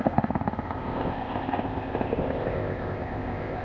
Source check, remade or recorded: remade